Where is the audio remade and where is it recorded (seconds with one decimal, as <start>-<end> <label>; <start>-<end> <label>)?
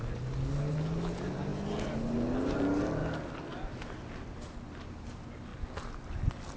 0.0-6.6 recorded